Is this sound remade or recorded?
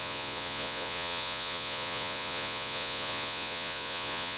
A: remade